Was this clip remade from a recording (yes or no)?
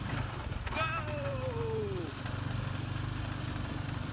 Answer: yes